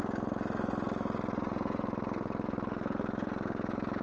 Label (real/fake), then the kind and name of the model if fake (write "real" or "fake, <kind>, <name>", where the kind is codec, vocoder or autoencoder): real